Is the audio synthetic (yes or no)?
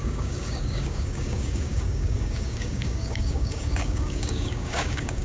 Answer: yes